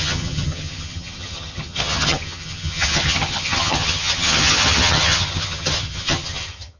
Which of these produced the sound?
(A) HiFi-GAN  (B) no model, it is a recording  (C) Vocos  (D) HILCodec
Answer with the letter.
A